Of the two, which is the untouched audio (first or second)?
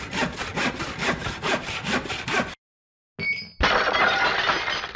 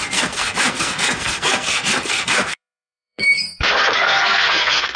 first